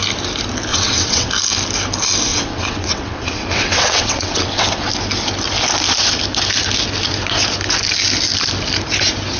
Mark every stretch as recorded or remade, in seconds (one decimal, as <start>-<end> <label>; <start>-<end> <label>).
0.0-0.7 recorded; 0.7-1.3 remade; 1.3-2.3 recorded; 2.3-4.9 remade; 4.9-9.4 recorded